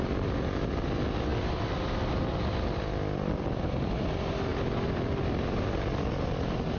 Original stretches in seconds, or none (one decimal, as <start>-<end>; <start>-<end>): 0.0-6.8